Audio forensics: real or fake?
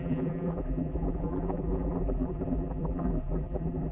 fake